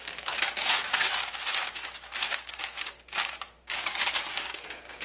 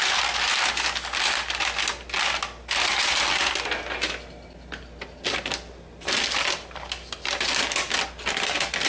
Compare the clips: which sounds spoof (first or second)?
first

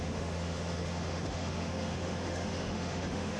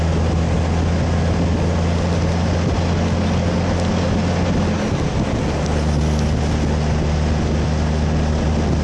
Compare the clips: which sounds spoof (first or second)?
first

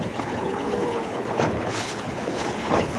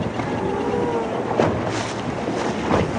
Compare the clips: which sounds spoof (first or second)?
first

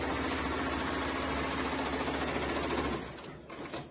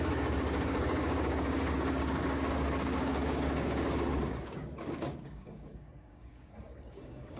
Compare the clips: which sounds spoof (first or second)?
second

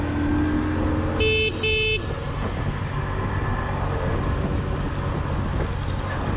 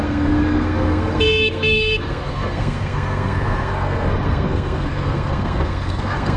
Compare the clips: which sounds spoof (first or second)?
second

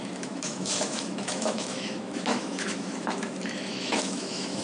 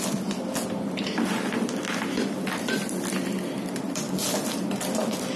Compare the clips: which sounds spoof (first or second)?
first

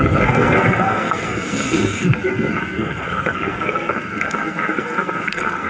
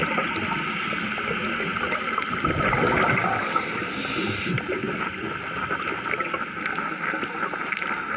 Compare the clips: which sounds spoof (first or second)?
first